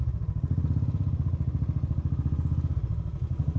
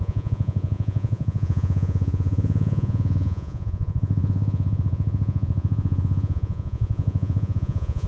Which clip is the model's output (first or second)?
second